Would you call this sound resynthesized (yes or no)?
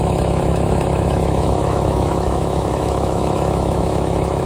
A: yes